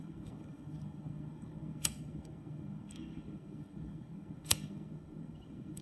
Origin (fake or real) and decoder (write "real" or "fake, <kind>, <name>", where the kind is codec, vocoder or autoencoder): fake, codec, SNAC